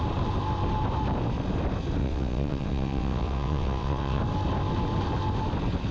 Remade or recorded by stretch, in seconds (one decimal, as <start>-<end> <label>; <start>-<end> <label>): 0.0-2.0 recorded; 2.0-4.2 remade; 4.2-5.9 recorded